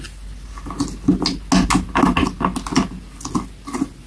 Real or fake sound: real